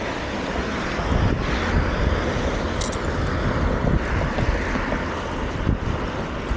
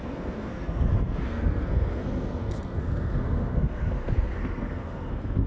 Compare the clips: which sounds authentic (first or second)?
first